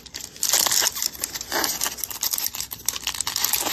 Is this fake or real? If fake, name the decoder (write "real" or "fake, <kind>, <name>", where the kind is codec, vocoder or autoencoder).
real